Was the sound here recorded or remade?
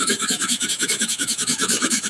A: remade